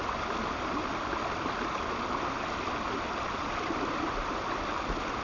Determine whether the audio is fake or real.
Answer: real